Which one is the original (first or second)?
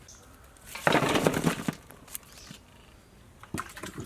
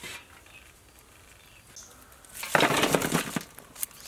second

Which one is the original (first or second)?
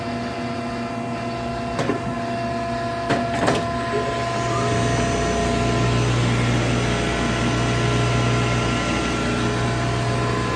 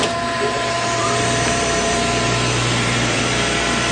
first